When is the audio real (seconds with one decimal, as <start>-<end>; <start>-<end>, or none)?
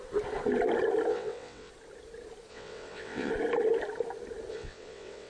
0.0-1.1; 1.7-2.5; 3.3-4.5